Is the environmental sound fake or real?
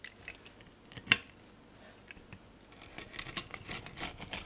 real